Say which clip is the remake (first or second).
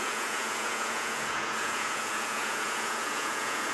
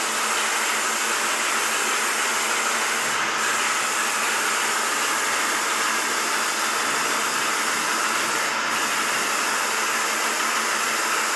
first